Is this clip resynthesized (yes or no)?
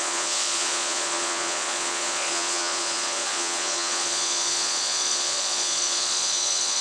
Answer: yes